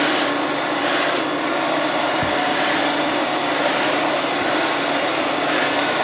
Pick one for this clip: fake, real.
real